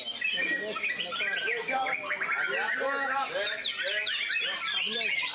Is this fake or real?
real